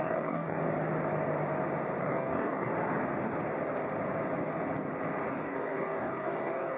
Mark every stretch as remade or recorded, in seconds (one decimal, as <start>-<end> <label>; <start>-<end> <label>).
0.0-0.6 remade; 0.6-2.0 recorded; 2.0-2.7 remade; 2.7-5.3 recorded; 5.3-6.8 remade